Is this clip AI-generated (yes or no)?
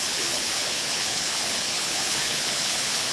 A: yes